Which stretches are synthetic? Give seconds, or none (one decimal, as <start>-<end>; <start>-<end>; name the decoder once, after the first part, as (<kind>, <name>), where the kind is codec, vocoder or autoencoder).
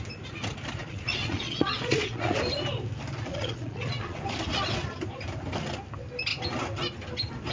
0.8-2.4 (vocoder, Vocos); 3.3-4.2